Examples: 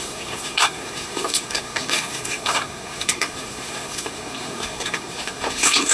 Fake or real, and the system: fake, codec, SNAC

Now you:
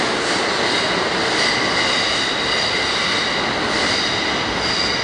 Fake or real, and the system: real